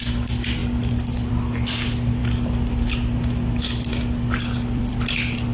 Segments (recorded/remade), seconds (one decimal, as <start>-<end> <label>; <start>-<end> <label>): 0.0-2.2 recorded; 2.2-2.8 remade; 2.8-3.9 recorded; 3.9-4.9 remade; 4.9-5.5 recorded